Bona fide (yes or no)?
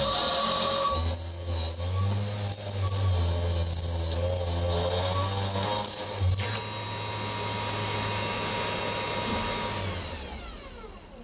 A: yes